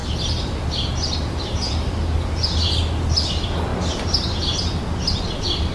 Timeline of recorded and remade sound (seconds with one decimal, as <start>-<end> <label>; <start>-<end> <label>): 0.0-5.7 recorded